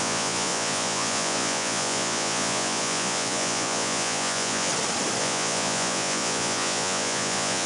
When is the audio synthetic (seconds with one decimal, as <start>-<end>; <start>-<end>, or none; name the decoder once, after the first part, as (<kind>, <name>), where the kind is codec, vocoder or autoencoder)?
0.0-4.7 (vocoder, Vocos); 5.2-7.7